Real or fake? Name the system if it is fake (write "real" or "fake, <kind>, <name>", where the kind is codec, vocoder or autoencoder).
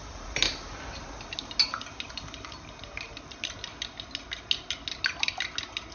real